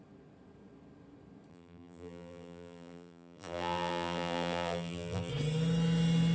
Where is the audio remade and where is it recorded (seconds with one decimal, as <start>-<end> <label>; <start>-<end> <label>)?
0.0-1.5 recorded; 1.5-5.3 remade; 5.3-6.3 recorded